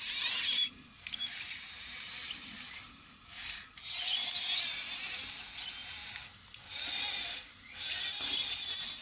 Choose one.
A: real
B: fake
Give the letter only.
A